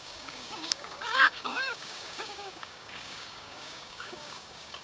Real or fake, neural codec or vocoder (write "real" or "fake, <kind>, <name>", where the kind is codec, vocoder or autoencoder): fake, codec, DAC